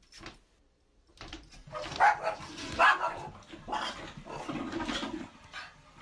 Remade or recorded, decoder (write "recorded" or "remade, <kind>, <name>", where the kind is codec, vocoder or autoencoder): recorded